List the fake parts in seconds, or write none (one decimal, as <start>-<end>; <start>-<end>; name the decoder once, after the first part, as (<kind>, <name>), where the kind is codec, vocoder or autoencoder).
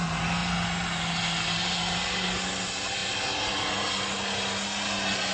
none